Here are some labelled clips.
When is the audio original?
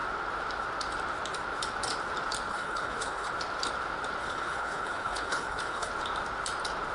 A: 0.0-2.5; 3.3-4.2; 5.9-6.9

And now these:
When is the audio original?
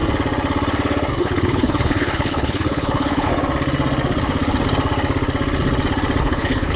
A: 0.0-1.2; 3.3-6.2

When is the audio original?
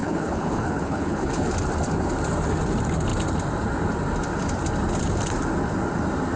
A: 1.5-6.4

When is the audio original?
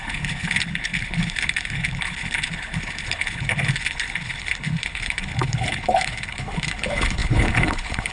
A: none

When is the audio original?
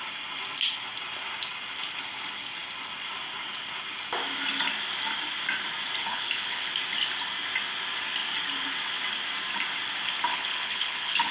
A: 0.0-6.0; 6.7-10.3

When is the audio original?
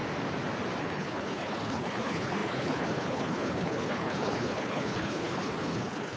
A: 0.0-0.8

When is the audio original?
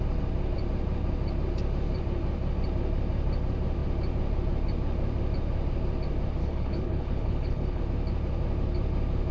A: 0.0-6.4; 7.8-9.3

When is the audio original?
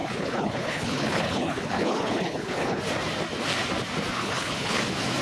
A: 2.8-4.2; 4.8-5.2